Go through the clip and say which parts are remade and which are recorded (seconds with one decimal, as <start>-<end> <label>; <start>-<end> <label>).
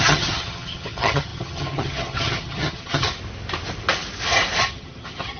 0.0-3.2 remade; 3.2-4.6 recorded; 4.6-5.4 remade